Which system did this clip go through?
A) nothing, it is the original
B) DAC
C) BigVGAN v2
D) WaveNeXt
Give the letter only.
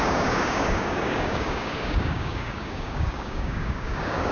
B